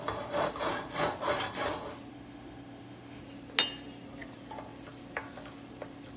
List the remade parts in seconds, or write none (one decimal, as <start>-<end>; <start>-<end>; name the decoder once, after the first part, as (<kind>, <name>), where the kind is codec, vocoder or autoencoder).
2.1-3.2 (autoencoder, DAC-VAE)